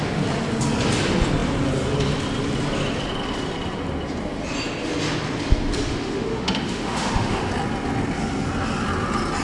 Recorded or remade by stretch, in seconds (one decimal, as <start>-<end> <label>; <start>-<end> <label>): 0.0-5.9 recorded; 5.9-7.5 remade; 7.5-9.4 recorded